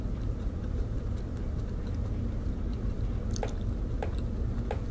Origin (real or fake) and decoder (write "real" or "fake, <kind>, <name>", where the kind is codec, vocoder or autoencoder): real